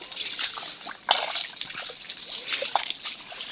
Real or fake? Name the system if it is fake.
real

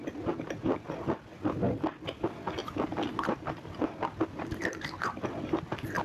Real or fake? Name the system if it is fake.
real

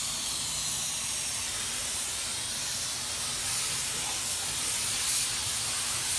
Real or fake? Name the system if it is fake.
real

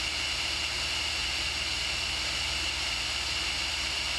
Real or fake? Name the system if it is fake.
real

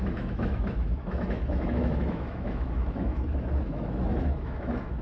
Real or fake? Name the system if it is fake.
fake, autoencoder, DAC-VAE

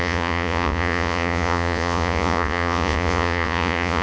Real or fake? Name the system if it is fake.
fake, vocoder, Vocos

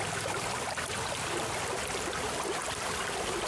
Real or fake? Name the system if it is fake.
real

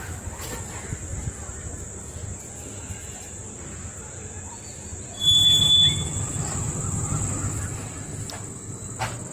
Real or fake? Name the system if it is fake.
real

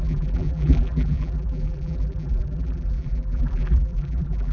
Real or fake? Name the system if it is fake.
fake, vocoder, BigVGAN v2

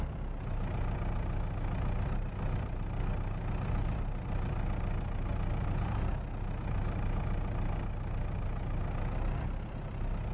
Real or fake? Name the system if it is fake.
real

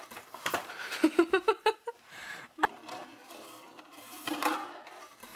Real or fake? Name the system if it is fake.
fake, vocoder, BigVGAN v2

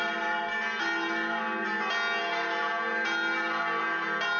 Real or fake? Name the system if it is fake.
real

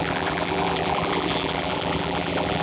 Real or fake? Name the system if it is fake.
fake, vocoder, BigVGAN v2